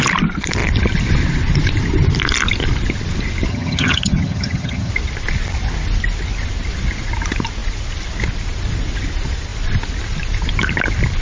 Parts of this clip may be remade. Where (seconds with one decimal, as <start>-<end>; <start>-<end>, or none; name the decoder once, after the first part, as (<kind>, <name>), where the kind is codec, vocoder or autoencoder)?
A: 3.5-4.9 (vocoder, HiFi-GAN)

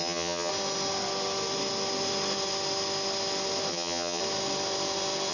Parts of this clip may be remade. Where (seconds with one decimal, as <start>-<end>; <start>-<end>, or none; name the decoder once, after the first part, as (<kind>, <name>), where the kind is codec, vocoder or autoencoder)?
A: 0.0-0.5 (vocoder, HiFi-GAN); 3.7-4.2

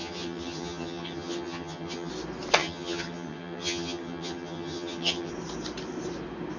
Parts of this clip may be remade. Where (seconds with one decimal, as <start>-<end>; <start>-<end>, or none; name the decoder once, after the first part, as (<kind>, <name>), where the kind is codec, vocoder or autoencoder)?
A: 0.0-2.1 (vocoder, HiFi-GAN); 2.6-5.3

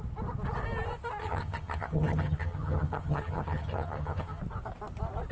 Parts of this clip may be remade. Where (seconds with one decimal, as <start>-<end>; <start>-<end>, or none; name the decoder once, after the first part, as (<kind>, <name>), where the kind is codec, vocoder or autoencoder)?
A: 1.2-4.4 (vocoder, HiFi-GAN)

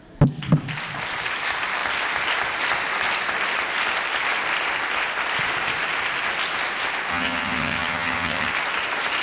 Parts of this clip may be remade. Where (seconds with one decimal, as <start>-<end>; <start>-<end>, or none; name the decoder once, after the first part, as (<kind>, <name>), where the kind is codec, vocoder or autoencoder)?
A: 7.1-8.5 (vocoder, HiFi-GAN)